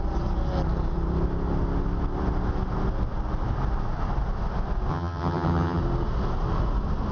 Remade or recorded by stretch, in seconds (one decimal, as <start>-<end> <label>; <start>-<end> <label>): 0.0-4.9 recorded; 4.9-5.8 remade; 5.8-7.1 recorded